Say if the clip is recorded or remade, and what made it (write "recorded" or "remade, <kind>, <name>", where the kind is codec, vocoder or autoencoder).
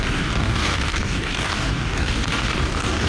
remade, codec, DAC